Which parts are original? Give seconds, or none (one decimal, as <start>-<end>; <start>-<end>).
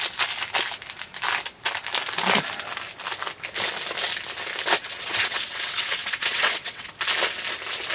0.0-4.8; 6.9-7.9